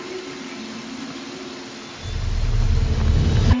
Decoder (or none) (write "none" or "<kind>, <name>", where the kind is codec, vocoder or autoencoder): none